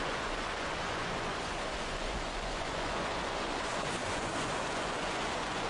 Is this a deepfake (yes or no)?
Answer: yes